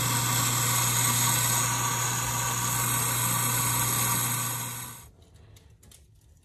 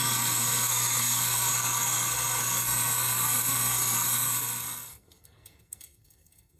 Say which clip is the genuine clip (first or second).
first